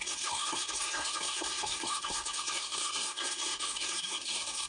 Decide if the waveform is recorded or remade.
remade